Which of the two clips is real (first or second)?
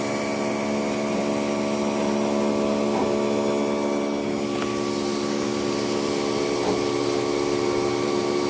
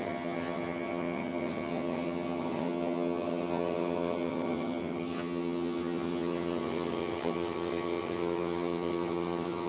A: first